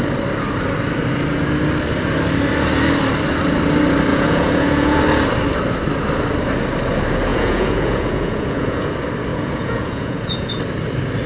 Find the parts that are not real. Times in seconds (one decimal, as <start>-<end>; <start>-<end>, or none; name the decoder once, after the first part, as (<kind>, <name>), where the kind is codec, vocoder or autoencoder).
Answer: 4.1-5.0 (vocoder, Vocos); 7.3-8.9; 9.3-10.6

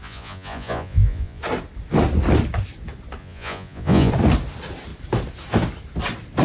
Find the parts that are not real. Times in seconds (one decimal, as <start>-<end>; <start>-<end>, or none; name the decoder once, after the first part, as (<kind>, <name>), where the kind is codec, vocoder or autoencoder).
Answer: 0.0-1.4 (vocoder, Vocos); 3.2-4.1

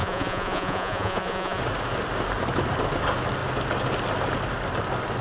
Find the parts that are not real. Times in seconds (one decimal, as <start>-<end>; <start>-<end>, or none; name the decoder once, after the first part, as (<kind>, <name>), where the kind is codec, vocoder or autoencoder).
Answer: 0.0-1.6 (vocoder, Vocos)

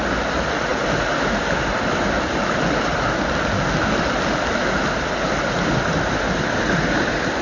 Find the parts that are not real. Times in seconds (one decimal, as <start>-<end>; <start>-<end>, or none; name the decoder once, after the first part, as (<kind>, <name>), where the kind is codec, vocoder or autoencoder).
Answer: none

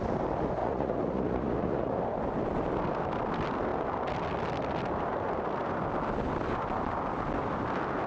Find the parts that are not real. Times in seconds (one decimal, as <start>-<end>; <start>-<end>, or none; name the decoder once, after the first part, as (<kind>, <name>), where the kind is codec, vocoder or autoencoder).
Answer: 0.6-1.9 (vocoder, Vocos)

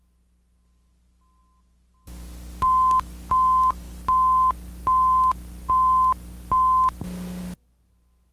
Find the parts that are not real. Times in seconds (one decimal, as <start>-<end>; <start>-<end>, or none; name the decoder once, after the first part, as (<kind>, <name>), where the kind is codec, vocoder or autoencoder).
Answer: none

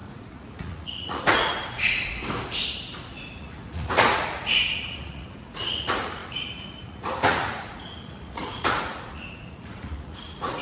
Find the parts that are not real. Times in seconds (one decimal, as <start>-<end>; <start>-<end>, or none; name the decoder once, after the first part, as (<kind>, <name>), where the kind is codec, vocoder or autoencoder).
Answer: 0.0-2.2 (vocoder, Vocos); 3.4-10.6